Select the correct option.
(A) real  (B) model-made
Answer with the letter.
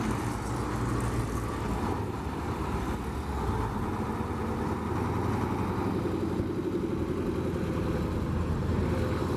A